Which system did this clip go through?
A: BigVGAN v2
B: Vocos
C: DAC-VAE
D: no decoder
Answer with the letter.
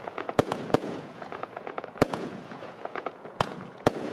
B